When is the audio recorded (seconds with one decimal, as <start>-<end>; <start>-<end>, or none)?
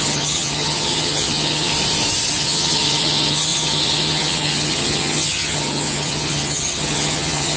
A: 1.7-2.4